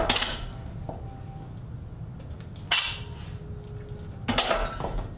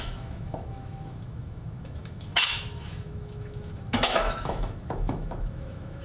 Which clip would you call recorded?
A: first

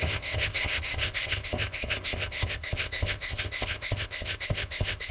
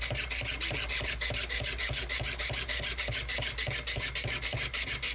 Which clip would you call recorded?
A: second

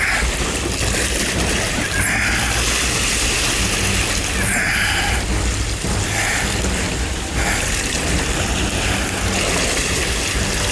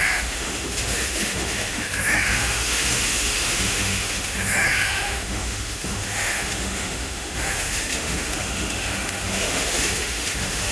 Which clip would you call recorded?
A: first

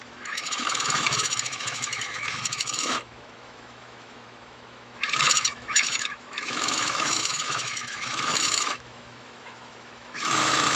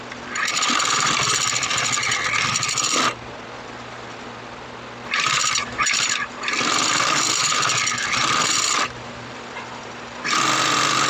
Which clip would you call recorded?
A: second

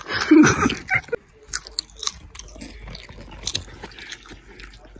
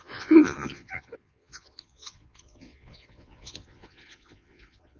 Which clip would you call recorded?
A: first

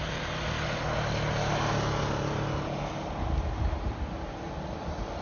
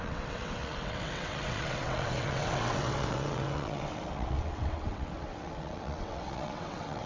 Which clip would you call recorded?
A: first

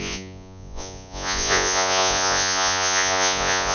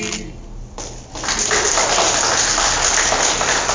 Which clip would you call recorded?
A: second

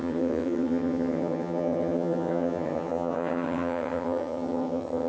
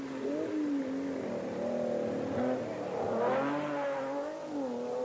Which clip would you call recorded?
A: second